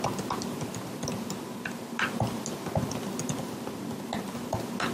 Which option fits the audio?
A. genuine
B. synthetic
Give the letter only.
A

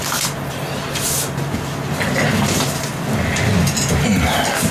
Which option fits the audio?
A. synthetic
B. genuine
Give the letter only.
B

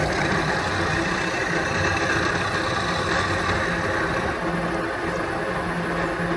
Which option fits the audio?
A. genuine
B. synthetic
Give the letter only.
A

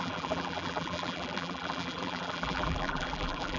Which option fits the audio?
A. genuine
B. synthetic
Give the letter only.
B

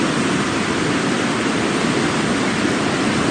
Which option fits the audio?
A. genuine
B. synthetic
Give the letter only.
A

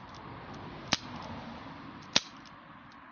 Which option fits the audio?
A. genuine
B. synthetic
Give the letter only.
A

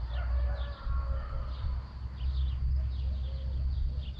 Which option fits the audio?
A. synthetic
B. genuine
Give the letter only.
B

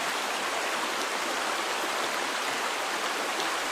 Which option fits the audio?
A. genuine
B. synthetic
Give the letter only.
A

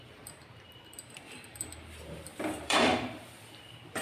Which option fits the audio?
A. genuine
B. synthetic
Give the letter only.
B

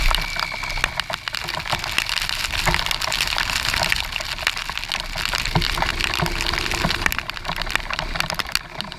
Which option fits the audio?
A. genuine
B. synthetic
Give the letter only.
A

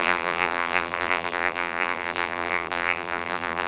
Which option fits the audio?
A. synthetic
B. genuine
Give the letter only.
A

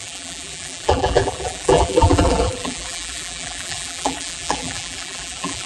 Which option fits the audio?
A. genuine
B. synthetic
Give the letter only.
B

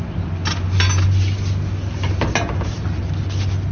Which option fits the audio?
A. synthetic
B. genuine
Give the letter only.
B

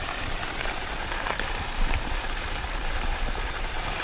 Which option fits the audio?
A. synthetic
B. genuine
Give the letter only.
A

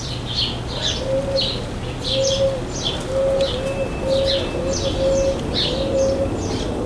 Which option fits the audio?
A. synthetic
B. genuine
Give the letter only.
B